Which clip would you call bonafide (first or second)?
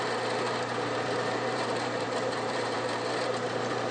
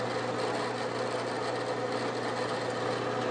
second